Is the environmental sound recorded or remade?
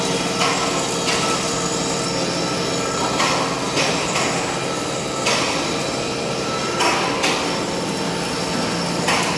recorded